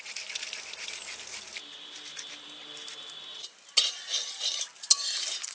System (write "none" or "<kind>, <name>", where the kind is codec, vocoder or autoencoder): none